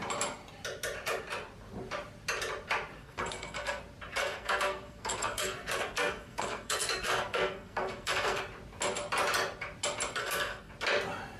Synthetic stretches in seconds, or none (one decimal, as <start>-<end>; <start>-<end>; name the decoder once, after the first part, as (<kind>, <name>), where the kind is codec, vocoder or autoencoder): 3.0-3.8 (codec, SNAC); 4.2-8.4; 10.2-10.7